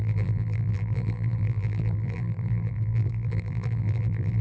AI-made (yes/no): yes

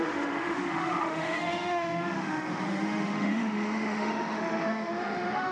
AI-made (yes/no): yes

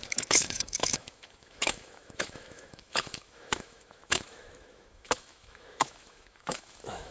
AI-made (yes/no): yes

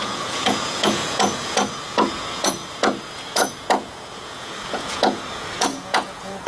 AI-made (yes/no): yes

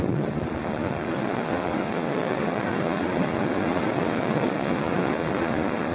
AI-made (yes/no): yes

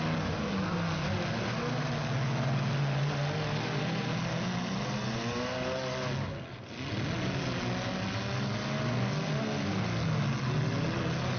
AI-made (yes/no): no